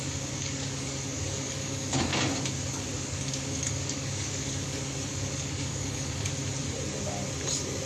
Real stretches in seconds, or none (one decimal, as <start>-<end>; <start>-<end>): 2.1-2.7; 6.3-7.9